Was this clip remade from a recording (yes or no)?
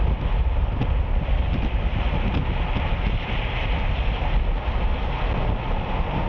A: no